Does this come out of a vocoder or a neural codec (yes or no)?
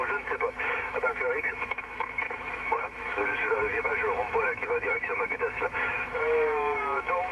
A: yes